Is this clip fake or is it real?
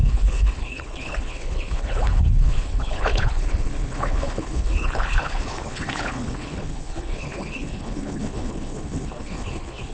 fake